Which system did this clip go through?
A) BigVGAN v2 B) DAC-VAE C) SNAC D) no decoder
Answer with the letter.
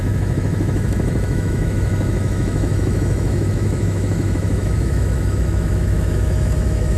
B